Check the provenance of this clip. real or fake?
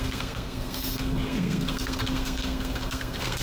fake